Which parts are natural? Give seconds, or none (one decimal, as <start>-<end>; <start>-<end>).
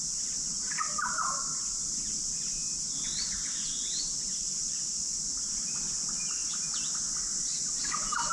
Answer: 0.0-8.3